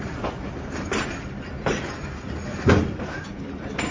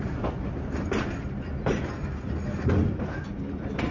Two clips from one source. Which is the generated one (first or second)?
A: first